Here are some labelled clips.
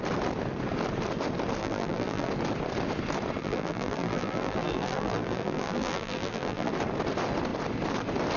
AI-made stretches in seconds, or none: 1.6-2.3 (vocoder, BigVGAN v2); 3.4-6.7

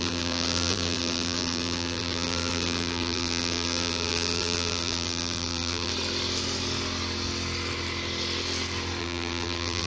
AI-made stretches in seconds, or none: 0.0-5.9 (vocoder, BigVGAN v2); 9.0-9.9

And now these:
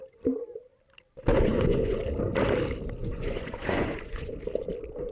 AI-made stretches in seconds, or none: 1.3-2.0 (vocoder, Vocos); 3.0-4.3

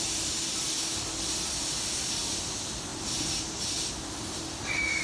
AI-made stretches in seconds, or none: none

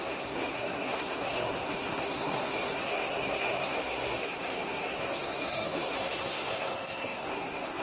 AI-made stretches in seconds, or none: 0.0-7.8 (codec, SNAC)

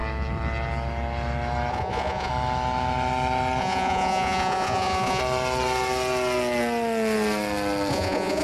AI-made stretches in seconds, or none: 1.7-2.3 (vocoder, Vocos); 3.6-5.2; 7.9-8.4